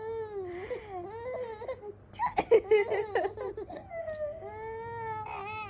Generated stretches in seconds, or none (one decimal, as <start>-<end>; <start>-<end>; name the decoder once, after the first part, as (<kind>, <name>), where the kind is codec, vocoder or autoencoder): 2.9-4.0 (vocoder, BigVGAN v2)

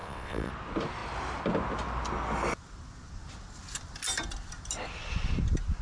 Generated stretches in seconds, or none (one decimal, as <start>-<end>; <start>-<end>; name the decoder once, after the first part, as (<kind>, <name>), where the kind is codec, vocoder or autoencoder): 0.0-0.5 (vocoder, WaveNeXt)